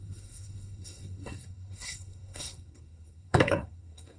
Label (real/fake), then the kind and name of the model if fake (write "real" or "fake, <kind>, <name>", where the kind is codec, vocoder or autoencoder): fake, codec, SNAC